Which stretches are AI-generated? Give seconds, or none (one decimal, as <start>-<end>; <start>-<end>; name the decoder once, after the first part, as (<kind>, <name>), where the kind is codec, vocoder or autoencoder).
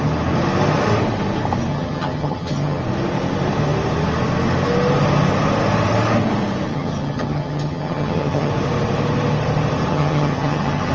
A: 1.7-2.8 (vocoder, HiFi-GAN); 6.7-8.5; 9.9-10.9